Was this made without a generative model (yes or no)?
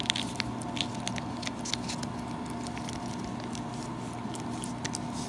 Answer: yes